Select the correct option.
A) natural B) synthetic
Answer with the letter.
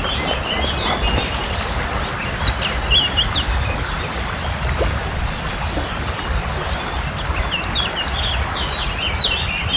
A